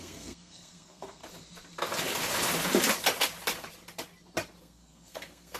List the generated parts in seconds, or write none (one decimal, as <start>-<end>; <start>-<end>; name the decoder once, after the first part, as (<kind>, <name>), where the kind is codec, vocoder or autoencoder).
0.0-1.2 (codec, SNAC); 4.6-5.6